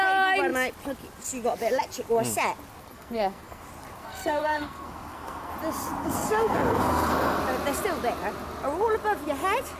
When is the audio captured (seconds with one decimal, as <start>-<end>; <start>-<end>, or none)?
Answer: 0.0-2.8; 3.6-4.0; 5.5-6.0; 7.4-9.8